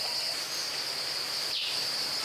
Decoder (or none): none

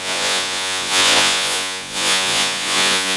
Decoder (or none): vocoder, Vocos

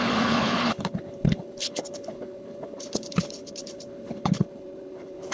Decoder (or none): codec, HILCodec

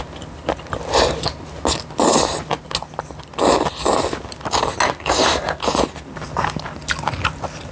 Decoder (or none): none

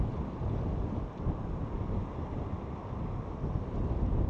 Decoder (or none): none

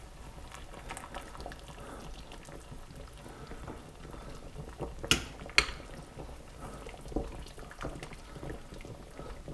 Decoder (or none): none